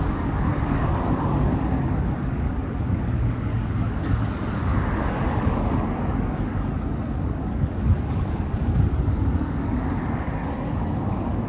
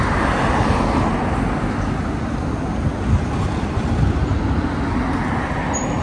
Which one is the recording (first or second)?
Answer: second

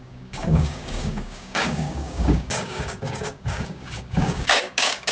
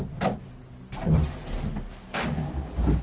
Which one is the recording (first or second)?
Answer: second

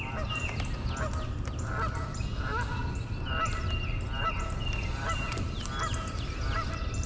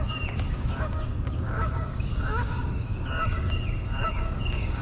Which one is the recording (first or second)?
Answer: first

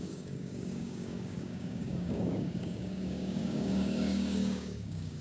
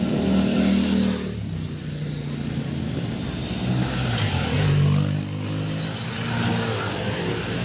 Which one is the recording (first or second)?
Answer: second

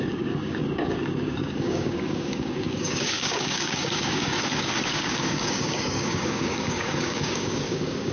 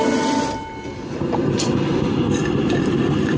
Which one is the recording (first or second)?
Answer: second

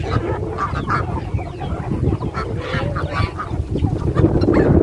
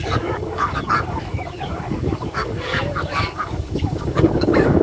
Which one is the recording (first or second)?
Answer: first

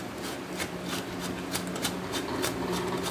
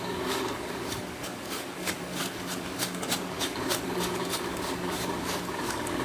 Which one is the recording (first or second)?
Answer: first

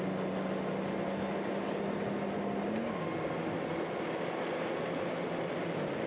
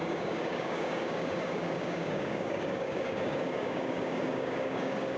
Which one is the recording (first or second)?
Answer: first